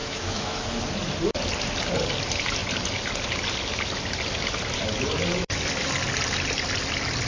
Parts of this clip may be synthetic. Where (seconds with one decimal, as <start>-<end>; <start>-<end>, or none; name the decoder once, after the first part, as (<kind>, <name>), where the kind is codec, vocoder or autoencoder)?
0.0-0.8 (autoencoder, DAC-VAE)